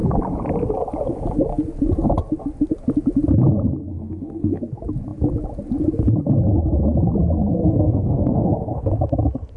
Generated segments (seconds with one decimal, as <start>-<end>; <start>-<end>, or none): 3.9-4.6; 7.6-8.9